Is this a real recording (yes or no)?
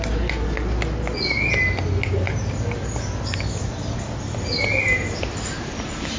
yes